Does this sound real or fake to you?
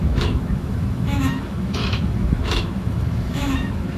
fake